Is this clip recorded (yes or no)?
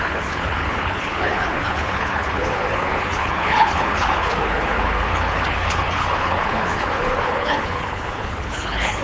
no